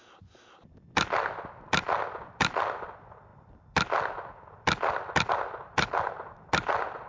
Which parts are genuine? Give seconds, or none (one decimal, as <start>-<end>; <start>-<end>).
0.0-7.1